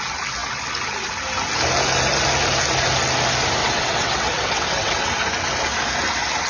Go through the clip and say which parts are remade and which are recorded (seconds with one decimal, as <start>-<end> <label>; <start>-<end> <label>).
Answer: 0.0-3.6 recorded; 3.6-5.1 remade; 5.1-6.5 recorded